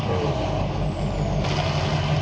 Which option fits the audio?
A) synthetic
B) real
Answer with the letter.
B